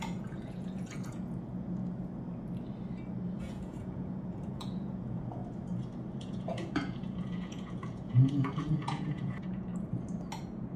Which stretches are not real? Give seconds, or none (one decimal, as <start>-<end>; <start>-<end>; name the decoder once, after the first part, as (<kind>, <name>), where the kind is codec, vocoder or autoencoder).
0.0-1.8 (vocoder, Vocos); 3.4-5.4; 6.2-9.7; 10.4-10.8